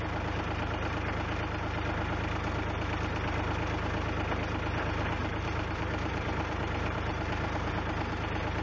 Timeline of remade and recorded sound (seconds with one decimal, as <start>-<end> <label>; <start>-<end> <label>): 0.0-5.2 recorded; 5.2-7.7 remade; 7.7-8.6 recorded